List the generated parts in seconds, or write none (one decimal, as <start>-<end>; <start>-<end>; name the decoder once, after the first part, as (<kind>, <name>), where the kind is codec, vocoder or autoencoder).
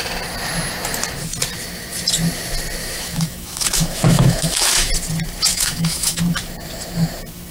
2.8-4.9 (autoencoder, DAC-VAE); 5.5-6.2